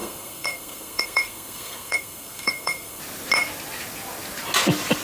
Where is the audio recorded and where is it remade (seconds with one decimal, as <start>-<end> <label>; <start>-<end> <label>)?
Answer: 0.0-3.0 remade; 3.0-5.0 recorded